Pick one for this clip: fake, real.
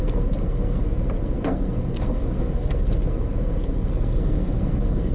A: fake